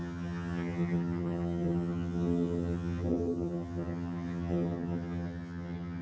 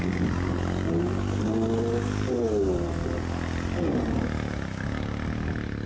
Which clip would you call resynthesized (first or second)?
first